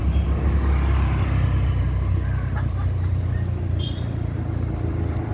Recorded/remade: recorded